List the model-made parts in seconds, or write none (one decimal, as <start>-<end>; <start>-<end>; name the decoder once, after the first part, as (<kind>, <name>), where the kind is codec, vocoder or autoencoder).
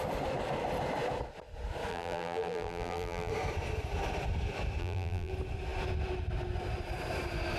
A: 1.9-3.3 (vocoder, BigVGAN v2); 4.8-5.3